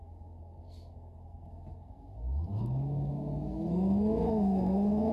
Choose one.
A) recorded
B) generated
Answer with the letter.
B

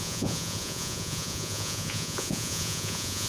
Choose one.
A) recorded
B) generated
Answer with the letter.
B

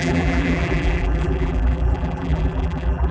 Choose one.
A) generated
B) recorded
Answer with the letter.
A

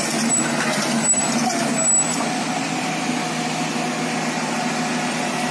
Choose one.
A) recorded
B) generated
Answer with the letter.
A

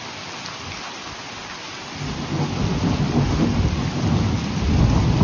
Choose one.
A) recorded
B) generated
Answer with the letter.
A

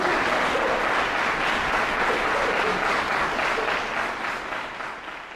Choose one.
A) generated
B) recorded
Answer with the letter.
B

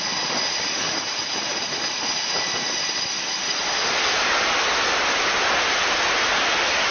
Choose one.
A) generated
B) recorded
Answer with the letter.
A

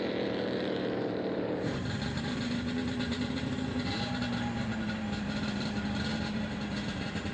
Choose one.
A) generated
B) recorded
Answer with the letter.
A